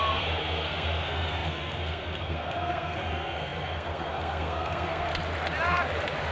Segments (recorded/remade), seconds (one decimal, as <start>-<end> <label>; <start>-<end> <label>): 0.0-5.1 remade; 5.1-6.3 recorded